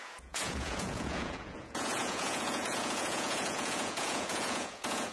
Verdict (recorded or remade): remade